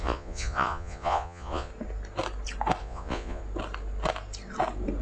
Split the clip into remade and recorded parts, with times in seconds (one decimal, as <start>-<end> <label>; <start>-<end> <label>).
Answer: 0.0-1.7 remade; 1.7-2.8 recorded; 2.8-3.4 remade; 3.4-5.0 recorded